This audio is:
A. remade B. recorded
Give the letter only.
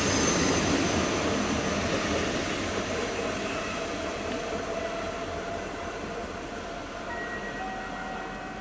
B